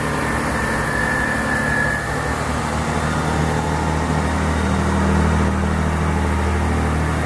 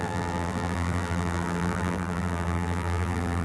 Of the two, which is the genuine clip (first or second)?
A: first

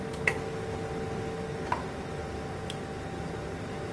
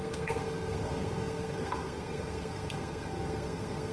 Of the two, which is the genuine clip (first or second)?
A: first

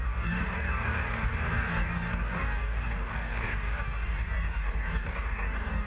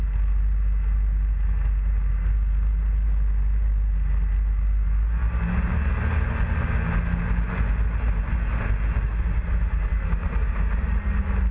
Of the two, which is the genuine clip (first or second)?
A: second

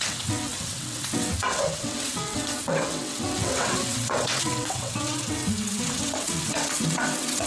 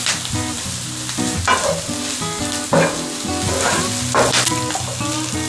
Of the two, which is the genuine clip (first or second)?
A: second